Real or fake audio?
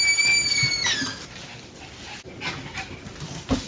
real